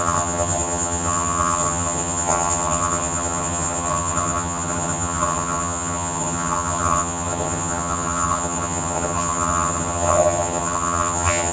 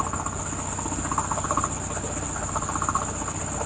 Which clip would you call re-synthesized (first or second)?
first